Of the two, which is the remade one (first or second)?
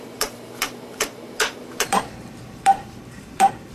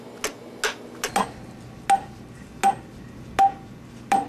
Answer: first